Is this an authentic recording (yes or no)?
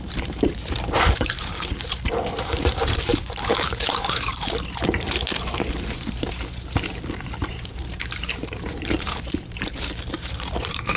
no